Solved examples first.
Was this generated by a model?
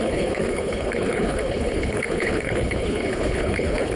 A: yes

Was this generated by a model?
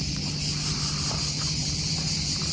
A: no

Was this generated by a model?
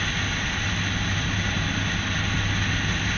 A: no